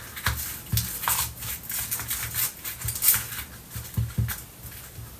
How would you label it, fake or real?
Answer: real